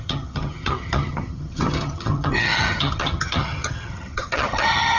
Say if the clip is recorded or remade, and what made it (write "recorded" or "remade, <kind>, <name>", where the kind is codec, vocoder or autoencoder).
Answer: remade, vocoder, HiFi-GAN